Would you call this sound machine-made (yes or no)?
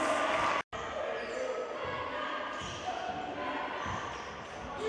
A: no